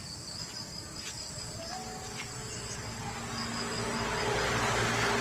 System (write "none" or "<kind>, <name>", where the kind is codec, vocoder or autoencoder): none